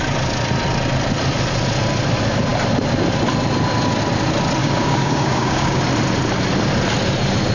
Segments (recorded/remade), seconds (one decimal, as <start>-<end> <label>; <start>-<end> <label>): 0.0-4.6 recorded; 4.6-5.8 remade; 5.8-7.5 recorded